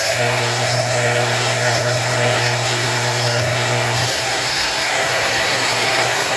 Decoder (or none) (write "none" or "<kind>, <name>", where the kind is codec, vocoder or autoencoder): codec, SNAC